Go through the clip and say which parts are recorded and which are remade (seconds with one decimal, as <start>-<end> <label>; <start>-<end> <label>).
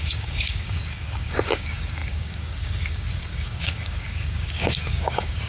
0.0-5.5 remade